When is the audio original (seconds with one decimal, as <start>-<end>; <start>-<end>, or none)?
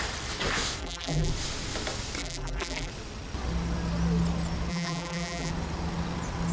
0.0-0.8; 1.3-2.2; 2.9-4.7; 5.5-6.5